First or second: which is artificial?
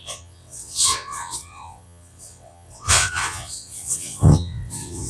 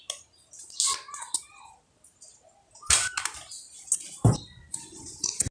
first